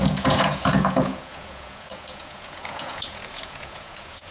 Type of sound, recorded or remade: remade